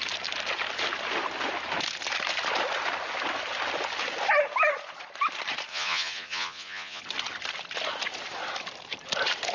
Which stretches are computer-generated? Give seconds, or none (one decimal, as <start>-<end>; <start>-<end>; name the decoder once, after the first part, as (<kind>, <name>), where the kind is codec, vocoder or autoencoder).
5.7-7.0 (vocoder, Vocos)